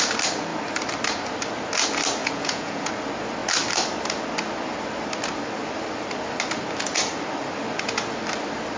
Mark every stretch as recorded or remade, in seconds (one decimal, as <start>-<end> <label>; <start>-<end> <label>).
0.0-2.2 recorded; 2.2-2.9 remade; 2.9-8.8 recorded